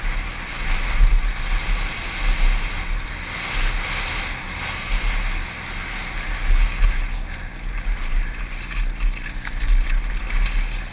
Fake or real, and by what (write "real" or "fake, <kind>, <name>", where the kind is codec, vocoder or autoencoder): real